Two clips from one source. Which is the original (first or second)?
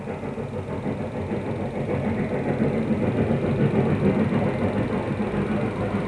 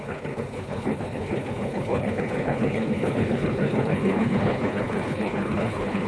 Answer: first